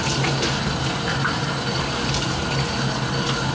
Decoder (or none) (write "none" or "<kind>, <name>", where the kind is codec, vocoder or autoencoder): none